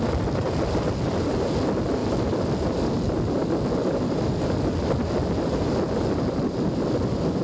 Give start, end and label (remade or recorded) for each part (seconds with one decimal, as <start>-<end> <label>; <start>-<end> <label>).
0.0-7.4 recorded